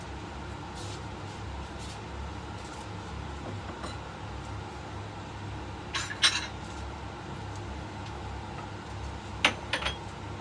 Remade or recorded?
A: recorded